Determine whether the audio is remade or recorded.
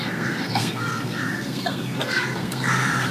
remade